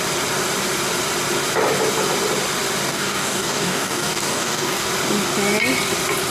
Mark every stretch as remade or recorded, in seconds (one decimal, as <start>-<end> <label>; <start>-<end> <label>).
0.0-2.9 recorded; 2.9-4.9 remade; 4.9-6.3 recorded